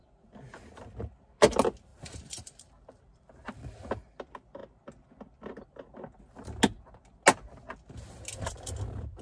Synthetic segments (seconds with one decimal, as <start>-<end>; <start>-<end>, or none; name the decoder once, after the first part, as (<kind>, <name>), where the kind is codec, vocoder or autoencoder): 1.9-2.6 (vocoder, BigVGAN v2)